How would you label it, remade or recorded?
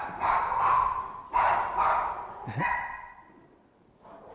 recorded